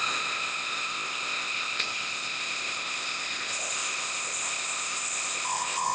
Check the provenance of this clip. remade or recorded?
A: remade